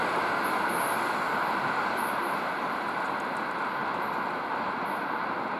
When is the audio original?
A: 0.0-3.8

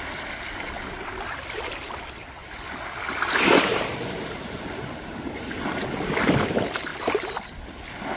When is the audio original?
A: 0.0-3.7; 5.4-8.2

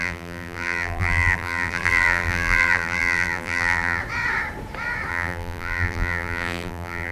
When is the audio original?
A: 4.0-5.1

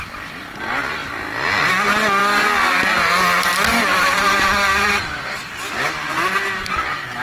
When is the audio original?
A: 0.0-3.7; 5.0-7.2

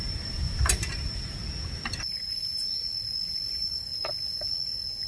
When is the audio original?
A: 1.4-2.1; 2.6-3.5; 3.9-5.1

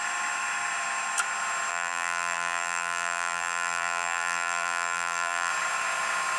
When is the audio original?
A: 0.0-1.7; 5.5-6.4

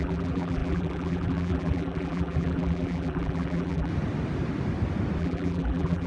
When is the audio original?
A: 3.9-5.2

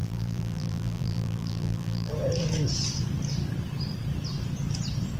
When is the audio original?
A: 2.1-5.2